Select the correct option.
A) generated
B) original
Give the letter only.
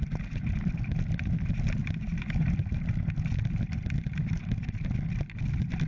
B